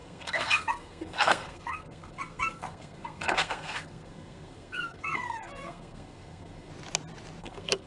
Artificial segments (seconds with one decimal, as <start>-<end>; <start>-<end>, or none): 0.0-6.7; 7.4-7.9